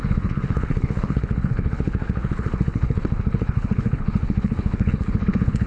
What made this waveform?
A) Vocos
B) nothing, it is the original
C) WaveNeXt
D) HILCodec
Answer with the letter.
D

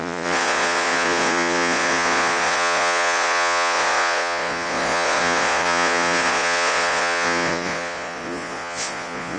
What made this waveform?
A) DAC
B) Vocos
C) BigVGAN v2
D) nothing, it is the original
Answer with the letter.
B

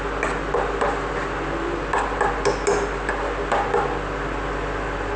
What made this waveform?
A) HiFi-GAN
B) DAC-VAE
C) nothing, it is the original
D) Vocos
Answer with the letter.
C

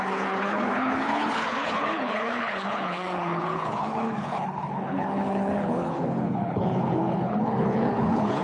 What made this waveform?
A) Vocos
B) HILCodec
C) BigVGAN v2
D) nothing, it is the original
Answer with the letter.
B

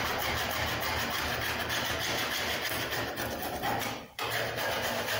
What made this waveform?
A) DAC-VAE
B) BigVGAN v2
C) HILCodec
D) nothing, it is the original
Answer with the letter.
D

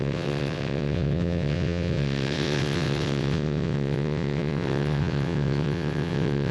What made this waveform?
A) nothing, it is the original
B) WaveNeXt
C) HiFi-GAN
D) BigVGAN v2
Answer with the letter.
B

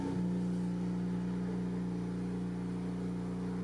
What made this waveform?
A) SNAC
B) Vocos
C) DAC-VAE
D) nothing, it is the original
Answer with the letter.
D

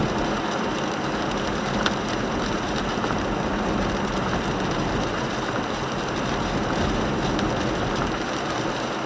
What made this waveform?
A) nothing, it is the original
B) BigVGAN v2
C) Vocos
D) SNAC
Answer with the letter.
B